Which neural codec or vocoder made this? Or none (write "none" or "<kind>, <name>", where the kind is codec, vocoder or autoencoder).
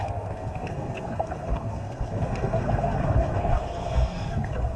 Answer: codec, SNAC